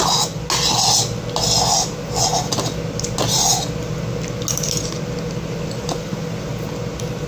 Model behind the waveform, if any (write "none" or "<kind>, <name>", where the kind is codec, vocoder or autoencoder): none